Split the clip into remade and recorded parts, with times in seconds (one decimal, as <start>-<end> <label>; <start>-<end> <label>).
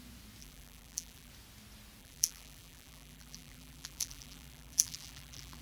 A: 0.0-0.4 recorded; 0.4-1.3 remade; 1.3-2.0 recorded; 2.0-5.6 remade